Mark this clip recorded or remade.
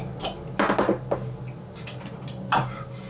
recorded